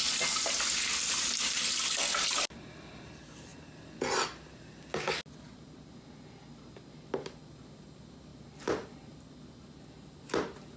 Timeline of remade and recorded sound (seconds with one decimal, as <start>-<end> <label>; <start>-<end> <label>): 0.0-10.8 recorded